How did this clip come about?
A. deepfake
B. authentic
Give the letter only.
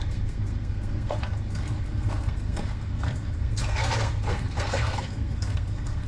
A